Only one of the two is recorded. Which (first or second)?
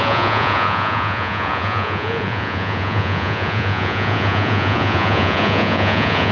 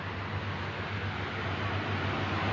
second